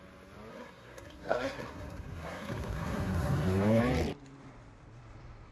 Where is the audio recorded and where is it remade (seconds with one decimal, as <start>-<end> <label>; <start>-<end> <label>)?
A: 0.0-0.5 recorded; 0.5-3.8 remade; 3.8-5.5 recorded

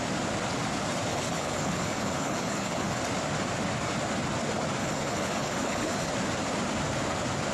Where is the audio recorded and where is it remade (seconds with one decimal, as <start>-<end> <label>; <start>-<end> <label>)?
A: 0.0-1.1 recorded; 1.1-3.0 remade; 3.0-4.8 recorded; 4.8-6.1 remade; 6.1-7.5 recorded

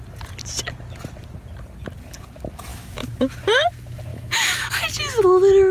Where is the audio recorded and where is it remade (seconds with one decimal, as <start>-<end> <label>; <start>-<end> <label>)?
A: 0.0-2.7 recorded; 2.7-3.4 remade; 3.4-4.1 recorded; 4.1-4.7 remade; 4.7-5.7 recorded

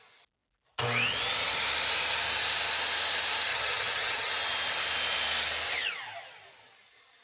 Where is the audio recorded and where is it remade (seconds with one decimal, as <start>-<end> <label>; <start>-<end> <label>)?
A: 0.0-3.5 recorded; 3.5-4.3 remade; 4.3-7.2 recorded

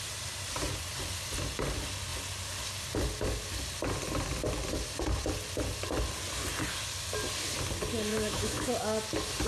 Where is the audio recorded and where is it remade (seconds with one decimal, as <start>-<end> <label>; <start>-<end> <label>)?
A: 0.0-8.1 recorded; 8.1-8.7 remade; 8.7-9.5 recorded

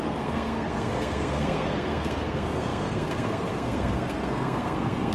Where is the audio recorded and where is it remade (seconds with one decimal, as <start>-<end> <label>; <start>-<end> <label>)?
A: 0.0-5.1 remade